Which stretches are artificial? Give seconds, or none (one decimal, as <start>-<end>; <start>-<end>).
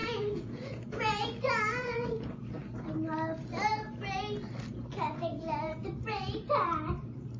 0.0-1.4; 1.8-2.4; 5.3-5.8